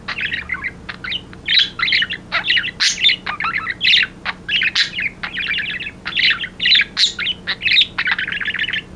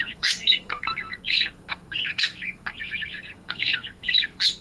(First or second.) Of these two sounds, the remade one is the second